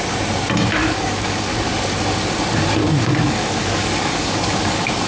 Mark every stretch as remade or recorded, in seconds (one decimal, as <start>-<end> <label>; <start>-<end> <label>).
0.0-0.8 recorded; 0.8-1.5 remade; 1.5-2.8 recorded; 2.8-5.1 remade